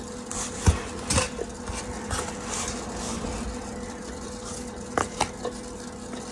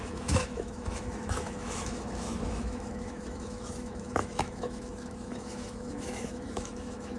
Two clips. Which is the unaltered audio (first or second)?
first